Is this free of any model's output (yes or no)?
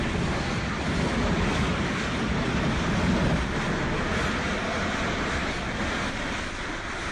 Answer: yes